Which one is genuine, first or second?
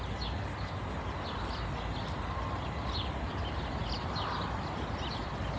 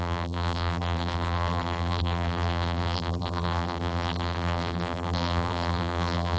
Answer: first